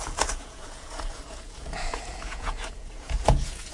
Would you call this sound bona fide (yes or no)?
no